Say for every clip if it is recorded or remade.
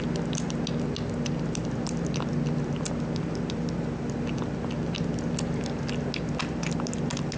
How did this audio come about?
recorded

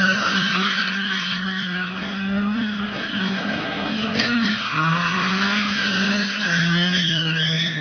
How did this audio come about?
remade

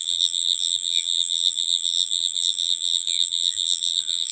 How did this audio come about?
remade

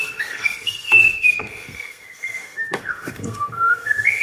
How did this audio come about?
remade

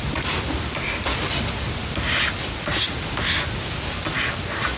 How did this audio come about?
recorded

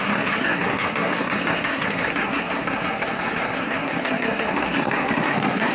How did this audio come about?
remade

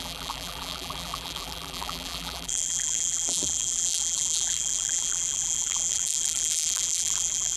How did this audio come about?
remade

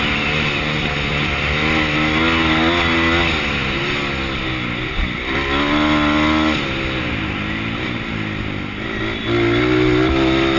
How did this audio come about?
recorded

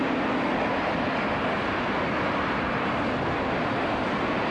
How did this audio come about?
recorded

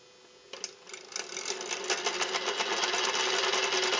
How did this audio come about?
recorded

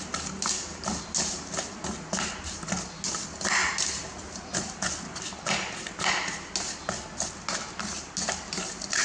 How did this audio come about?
recorded